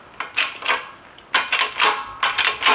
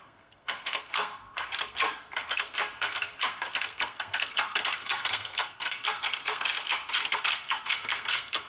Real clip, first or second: first